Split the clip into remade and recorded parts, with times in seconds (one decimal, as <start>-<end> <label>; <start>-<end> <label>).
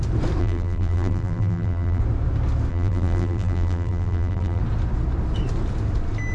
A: 0.0-0.4 recorded; 0.4-2.0 remade; 2.0-2.7 recorded; 2.7-4.6 remade; 4.6-6.3 recorded